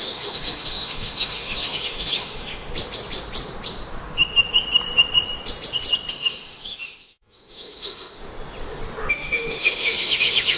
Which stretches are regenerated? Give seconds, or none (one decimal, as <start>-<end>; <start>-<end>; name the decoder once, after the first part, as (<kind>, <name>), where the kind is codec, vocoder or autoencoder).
0.0-2.7 (autoencoder, DAC-VAE); 6.1-8.2; 9.1-10.6